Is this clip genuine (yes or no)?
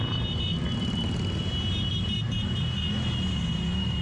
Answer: yes